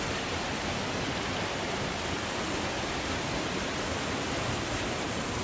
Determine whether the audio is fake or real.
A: real